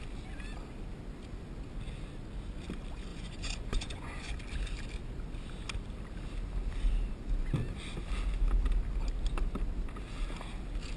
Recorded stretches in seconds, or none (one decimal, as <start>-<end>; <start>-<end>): 0.0-3.1; 4.3-11.0